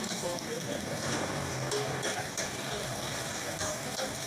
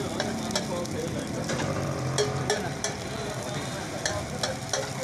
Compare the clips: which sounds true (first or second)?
second